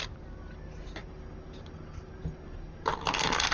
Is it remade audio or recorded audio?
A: recorded